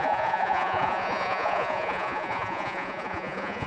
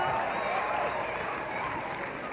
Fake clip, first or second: first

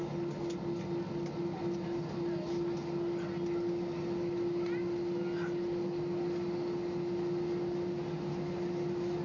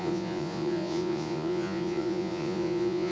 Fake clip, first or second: second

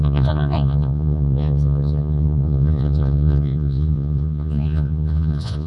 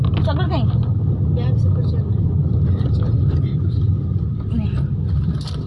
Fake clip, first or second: first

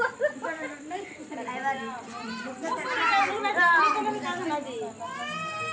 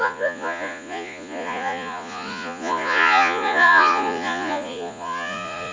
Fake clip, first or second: second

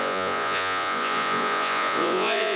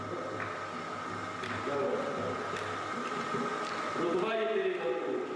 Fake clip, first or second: first